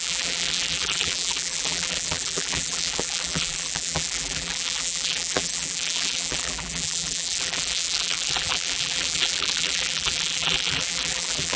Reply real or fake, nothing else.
fake